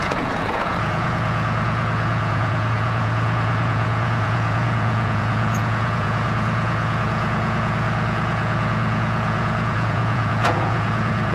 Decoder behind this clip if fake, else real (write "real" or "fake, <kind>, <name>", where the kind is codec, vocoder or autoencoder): fake, vocoder, Vocos